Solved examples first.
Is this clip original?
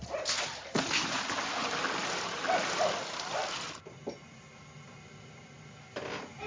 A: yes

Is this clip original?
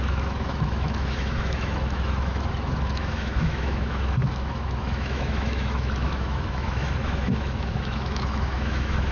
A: no